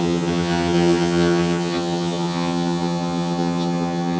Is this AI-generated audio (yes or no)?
yes